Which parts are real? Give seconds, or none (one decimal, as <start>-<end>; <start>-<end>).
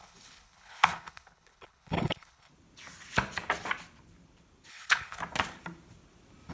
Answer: 2.5-4.7; 5.2-6.5